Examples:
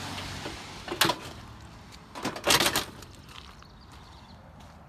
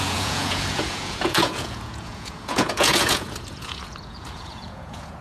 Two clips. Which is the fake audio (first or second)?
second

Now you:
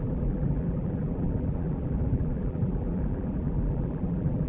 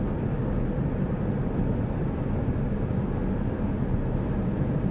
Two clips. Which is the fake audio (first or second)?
first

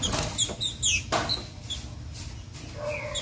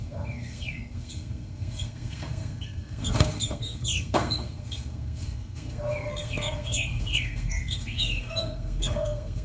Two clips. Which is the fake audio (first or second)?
second